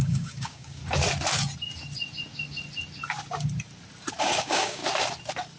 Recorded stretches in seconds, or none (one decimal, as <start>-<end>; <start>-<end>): 0.8-4.2; 4.8-5.6